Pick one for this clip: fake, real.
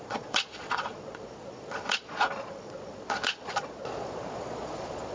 fake